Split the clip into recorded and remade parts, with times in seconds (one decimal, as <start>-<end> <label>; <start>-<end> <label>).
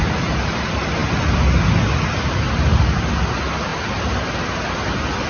0.0-5.3 recorded